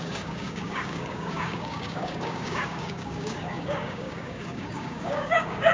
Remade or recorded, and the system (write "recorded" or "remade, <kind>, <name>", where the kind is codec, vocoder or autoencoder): remade, codec, DAC